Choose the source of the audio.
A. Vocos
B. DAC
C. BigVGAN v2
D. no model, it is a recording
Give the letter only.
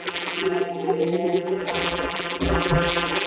C